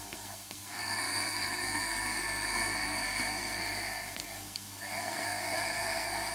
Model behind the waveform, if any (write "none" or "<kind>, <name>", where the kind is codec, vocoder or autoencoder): codec, SNAC